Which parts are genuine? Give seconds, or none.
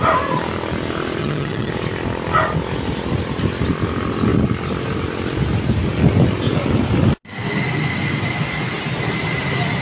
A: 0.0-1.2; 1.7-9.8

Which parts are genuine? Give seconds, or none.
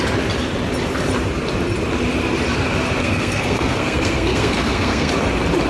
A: 0.0-3.0; 5.1-5.7